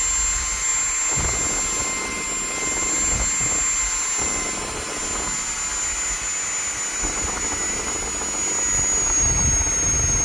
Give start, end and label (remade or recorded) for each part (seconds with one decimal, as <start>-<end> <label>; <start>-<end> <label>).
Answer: 0.0-10.2 recorded